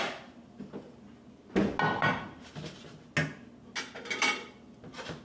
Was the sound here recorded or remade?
recorded